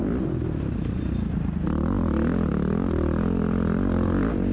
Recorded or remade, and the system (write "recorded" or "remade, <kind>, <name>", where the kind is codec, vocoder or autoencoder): recorded